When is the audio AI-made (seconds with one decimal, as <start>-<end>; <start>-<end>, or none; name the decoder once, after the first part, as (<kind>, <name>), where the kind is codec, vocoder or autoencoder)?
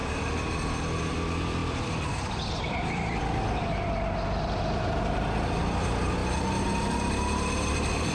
1.6-3.4 (vocoder, BigVGAN v2)